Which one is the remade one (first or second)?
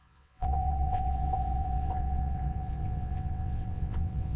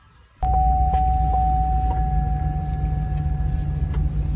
first